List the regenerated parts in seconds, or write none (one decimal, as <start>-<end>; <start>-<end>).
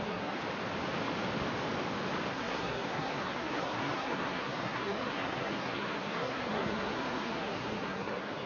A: 0.0-0.4; 2.3-8.5